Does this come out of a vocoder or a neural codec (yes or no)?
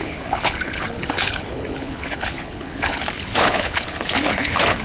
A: yes